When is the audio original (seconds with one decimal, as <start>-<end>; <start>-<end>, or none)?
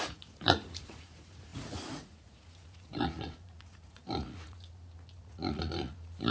none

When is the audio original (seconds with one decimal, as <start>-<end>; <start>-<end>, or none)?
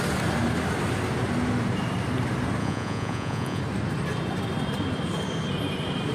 0.0-2.6; 3.6-6.1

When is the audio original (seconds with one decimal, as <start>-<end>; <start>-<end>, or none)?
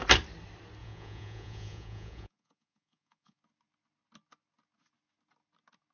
0.0-0.8; 3.4-5.9